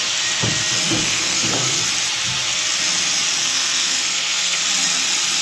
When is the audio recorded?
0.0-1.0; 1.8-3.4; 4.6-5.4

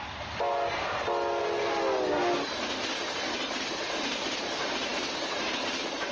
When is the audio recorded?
0.0-6.1

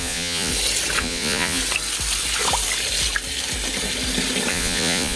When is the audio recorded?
0.5-1.0; 1.6-4.5